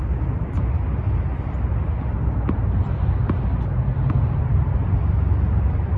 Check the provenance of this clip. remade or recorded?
recorded